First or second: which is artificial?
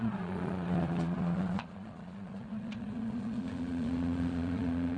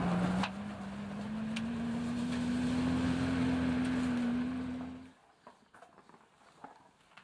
first